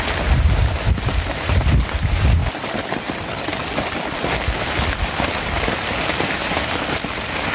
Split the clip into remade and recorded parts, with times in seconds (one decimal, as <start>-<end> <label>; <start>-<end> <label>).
0.0-1.3 recorded; 1.3-1.8 remade; 1.8-7.5 recorded